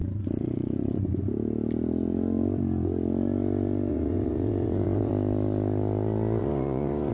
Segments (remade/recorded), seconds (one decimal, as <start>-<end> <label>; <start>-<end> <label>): 0.0-1.2 remade; 1.2-3.9 recorded; 3.9-5.1 remade; 5.1-6.4 recorded; 6.4-7.1 remade